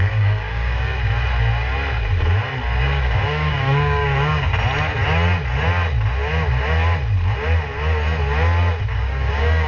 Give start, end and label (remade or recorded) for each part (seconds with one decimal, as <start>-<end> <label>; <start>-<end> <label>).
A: 0.0-0.9 remade; 0.9-2.8 recorded; 2.8-4.5 remade; 4.5-8.9 recorded; 8.9-9.7 remade